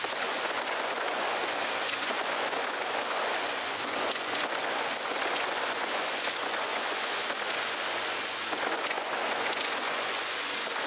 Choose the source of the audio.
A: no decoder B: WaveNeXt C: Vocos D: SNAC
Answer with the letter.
C